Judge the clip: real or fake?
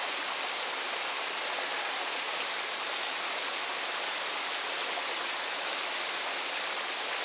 real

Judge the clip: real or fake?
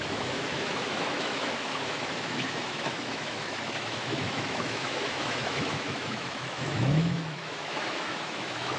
fake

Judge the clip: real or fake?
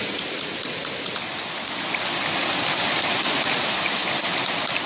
real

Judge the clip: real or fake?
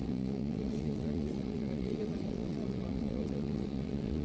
fake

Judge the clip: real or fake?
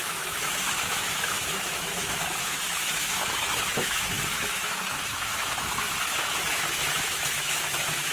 fake